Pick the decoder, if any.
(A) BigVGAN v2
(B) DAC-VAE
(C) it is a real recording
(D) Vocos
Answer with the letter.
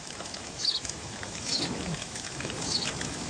B